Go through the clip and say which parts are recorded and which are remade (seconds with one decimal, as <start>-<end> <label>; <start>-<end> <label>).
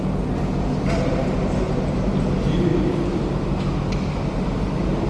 0.0-5.1 recorded